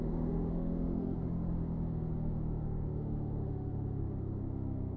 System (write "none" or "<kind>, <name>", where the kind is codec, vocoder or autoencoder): autoencoder, DAC-VAE